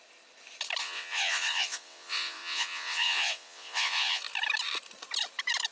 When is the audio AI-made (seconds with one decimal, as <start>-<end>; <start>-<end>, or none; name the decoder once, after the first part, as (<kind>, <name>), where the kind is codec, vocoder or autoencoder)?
0.8-4.2 (vocoder, WaveNeXt)